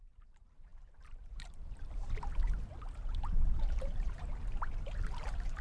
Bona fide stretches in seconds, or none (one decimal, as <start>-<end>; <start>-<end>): 2.7-3.2